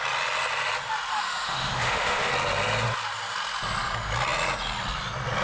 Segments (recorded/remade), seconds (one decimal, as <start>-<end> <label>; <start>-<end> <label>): 0.0-1.1 recorded; 1.1-2.3 remade; 2.3-5.4 recorded